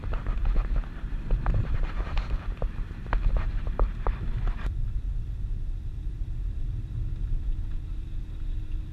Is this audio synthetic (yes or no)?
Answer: yes